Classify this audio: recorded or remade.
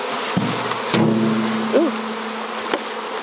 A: recorded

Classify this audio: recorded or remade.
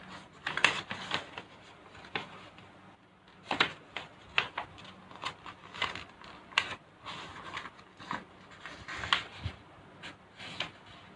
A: recorded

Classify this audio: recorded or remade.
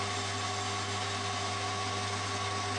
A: recorded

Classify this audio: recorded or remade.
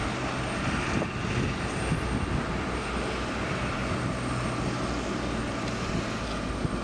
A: recorded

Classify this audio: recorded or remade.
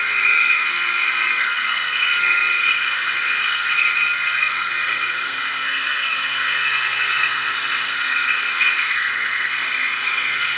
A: remade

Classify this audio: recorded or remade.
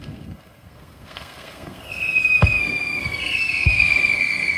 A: remade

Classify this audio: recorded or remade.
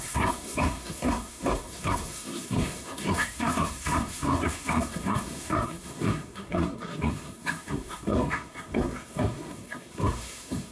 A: remade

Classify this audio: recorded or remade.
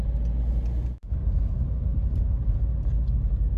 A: recorded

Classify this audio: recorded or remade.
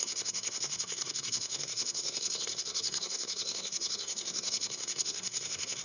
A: remade